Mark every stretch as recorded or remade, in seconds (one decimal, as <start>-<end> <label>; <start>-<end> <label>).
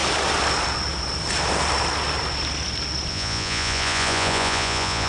0.0-3.1 recorded; 3.1-5.1 remade